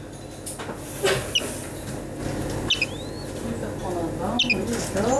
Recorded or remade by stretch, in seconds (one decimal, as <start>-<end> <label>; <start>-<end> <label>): 0.0-5.2 recorded